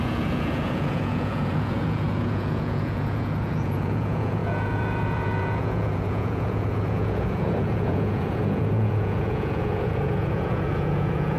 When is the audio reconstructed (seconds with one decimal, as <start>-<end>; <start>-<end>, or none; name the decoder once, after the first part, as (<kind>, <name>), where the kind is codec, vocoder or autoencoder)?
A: 0.0-11.4 (vocoder, Vocos)